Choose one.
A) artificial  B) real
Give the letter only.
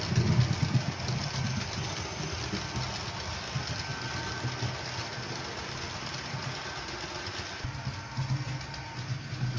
B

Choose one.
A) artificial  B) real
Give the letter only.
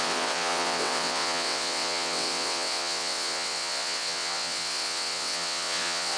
A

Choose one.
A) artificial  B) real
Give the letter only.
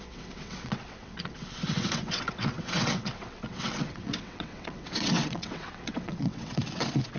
A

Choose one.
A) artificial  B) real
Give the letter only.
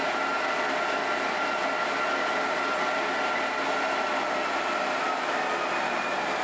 B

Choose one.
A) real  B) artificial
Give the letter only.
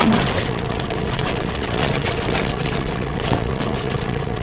B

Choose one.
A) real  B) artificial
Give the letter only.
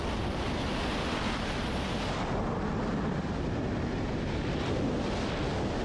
A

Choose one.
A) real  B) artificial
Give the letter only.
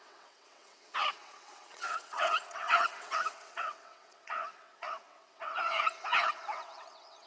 B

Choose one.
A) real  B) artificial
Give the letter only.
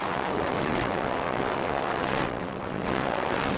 B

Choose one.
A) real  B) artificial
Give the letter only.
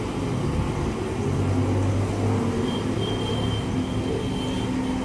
A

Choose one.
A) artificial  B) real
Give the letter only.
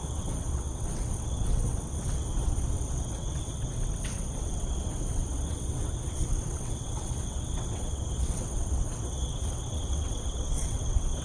A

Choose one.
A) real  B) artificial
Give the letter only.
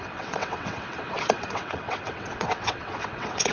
B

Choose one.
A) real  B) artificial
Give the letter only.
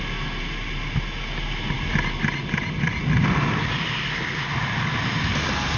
A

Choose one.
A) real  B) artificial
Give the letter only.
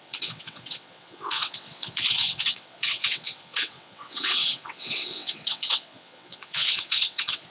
B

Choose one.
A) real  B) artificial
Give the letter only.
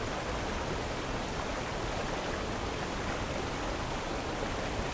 A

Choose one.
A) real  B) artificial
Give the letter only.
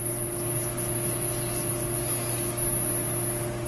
A